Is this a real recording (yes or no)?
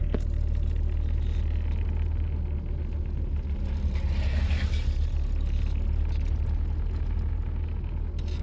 yes